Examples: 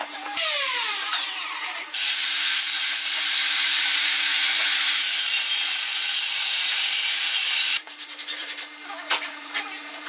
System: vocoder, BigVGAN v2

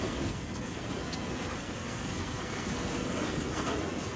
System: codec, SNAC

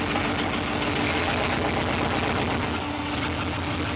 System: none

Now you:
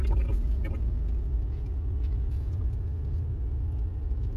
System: none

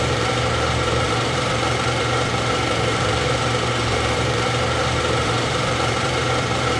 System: vocoder, BigVGAN v2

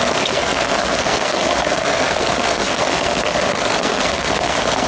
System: codec, SNAC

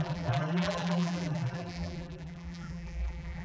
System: vocoder, BigVGAN v2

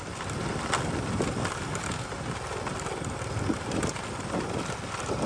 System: none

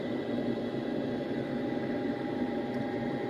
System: none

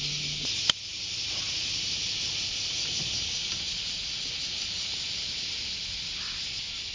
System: none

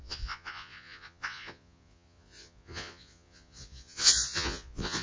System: vocoder, Vocos